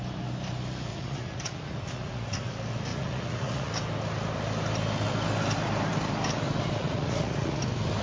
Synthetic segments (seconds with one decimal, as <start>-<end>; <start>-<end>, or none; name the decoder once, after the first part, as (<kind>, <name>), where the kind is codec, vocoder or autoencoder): 0.9-2.5 (vocoder, Vocos); 2.9-3.7; 6.8-7.6

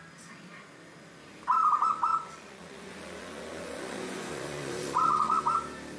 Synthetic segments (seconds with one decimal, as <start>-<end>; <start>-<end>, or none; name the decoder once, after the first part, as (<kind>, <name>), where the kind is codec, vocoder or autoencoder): 2.1-5.4 (vocoder, Vocos)

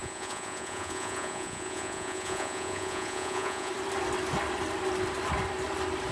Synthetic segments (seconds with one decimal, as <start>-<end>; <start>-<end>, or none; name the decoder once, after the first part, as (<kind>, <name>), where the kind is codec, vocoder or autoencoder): 0.0-3.7 (vocoder, Vocos)

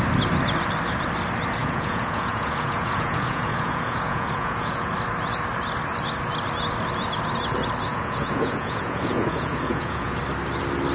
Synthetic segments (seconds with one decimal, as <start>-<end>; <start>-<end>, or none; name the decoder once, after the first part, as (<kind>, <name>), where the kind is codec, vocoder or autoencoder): 1.6-4.9 (vocoder, Vocos); 7.9-10.2

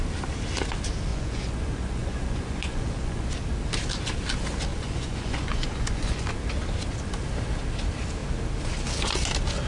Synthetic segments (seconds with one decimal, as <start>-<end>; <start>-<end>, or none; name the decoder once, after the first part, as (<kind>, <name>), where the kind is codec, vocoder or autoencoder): 1.1-3.3 (vocoder, Vocos); 4.7-6.3

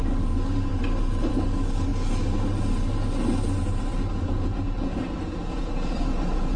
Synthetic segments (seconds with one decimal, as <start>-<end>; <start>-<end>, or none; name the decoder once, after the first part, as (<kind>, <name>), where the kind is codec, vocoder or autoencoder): 3.9-6.6 (vocoder, Vocos)

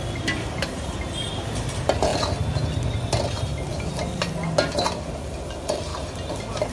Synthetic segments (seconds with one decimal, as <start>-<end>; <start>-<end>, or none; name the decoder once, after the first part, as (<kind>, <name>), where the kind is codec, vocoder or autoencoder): none